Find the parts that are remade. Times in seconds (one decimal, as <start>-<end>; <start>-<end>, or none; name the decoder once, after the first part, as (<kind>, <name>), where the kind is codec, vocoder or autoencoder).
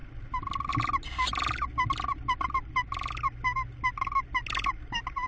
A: none